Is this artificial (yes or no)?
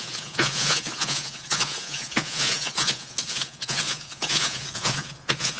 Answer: yes